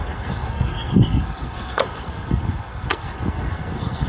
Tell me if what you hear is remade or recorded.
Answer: remade